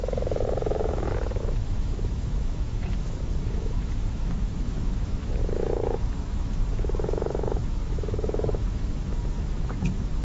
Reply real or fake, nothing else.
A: fake